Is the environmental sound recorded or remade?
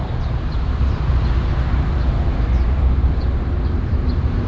remade